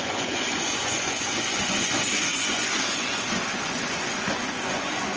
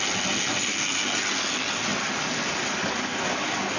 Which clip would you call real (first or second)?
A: second